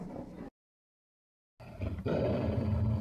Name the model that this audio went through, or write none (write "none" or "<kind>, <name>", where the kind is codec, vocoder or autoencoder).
none